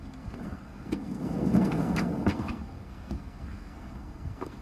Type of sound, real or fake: fake